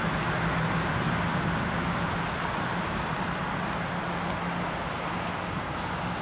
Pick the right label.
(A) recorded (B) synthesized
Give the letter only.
A